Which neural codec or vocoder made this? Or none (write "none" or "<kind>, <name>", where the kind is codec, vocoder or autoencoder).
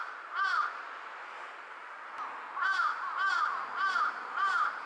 none